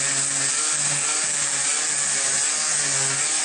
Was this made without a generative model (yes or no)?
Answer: yes